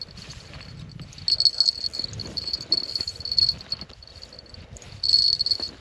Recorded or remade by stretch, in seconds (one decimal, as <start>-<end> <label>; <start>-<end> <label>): 0.0-2.2 recorded; 2.2-5.8 remade